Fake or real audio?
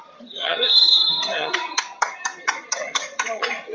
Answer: fake